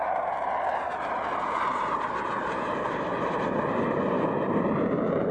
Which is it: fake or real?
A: fake